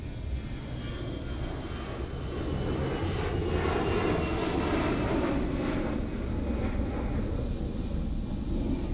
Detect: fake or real real